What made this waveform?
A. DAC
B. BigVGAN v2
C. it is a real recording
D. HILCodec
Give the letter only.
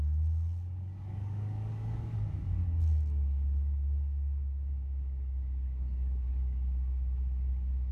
A